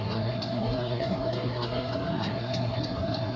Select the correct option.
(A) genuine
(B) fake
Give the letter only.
B